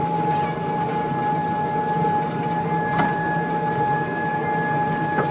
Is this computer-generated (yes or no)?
no